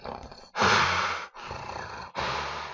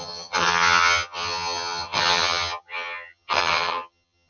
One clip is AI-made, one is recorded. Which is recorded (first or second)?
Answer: first